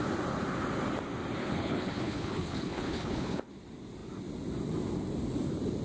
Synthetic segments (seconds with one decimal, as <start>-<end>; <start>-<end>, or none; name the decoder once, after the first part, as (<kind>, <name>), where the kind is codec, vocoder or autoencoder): 1.4-3.5 (codec, HILCodec)